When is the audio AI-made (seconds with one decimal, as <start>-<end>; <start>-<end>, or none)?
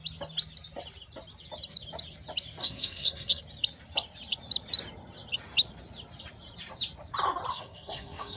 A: 2.6-3.4; 7.5-8.4